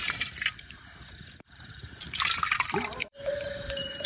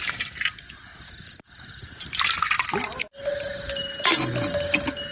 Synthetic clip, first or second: first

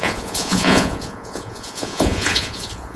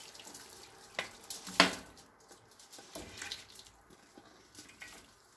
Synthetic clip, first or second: first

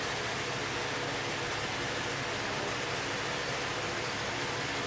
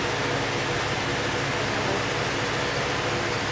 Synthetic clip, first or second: first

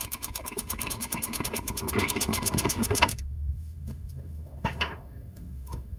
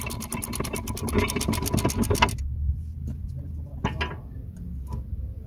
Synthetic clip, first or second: first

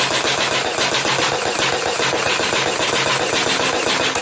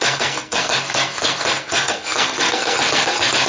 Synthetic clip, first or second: second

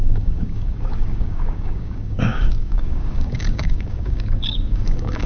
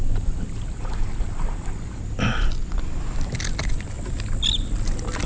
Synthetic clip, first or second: first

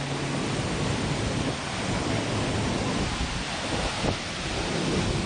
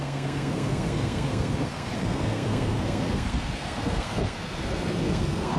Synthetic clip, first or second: second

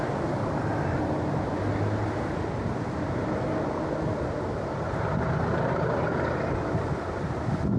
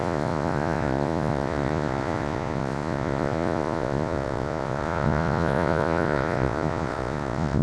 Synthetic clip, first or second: second